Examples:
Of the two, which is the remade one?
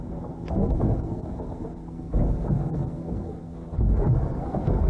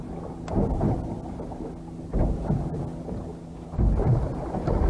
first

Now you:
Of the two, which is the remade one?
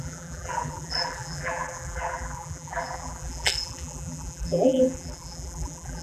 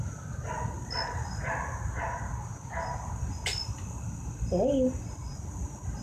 first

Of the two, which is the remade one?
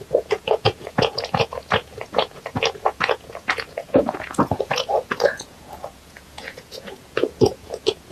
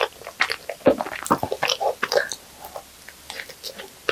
first